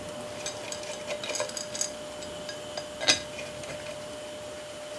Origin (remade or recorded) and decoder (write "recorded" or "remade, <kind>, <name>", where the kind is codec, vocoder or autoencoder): recorded